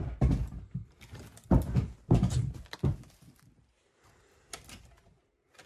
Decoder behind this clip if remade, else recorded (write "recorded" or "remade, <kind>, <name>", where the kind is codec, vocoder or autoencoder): recorded